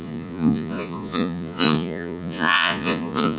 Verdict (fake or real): fake